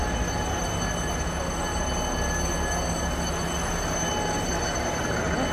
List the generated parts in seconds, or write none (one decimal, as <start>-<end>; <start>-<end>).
none